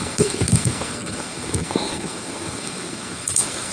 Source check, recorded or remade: remade